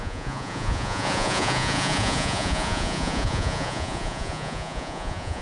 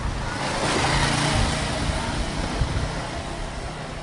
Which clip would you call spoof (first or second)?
first